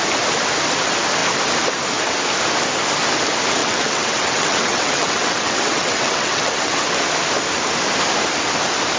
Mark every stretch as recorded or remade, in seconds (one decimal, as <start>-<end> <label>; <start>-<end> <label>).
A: 0.0-3.6 recorded; 3.6-7.0 remade; 7.0-9.0 recorded